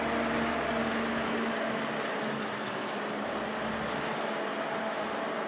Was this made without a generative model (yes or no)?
yes